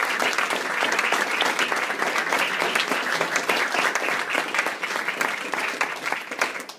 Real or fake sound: real